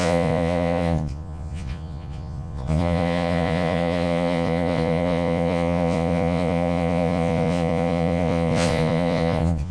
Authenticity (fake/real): fake